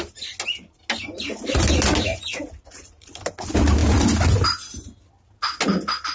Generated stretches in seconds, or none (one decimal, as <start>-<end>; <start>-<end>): 2.1-3.2